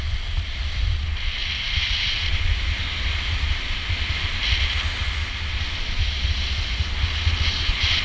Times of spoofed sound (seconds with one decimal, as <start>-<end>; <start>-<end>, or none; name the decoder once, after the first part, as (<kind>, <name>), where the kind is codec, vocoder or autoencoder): none